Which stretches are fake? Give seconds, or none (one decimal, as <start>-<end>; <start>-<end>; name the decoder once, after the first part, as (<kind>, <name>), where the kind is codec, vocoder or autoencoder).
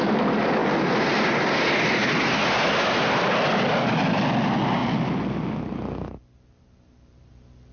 none